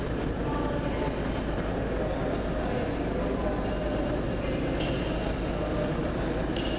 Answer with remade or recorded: recorded